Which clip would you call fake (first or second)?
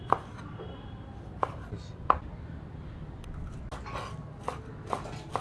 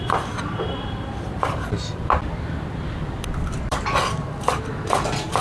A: second